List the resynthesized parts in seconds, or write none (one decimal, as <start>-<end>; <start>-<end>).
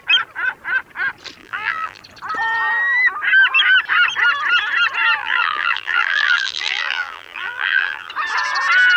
1.4-2.0; 5.2-8.1